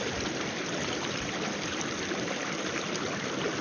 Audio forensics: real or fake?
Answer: real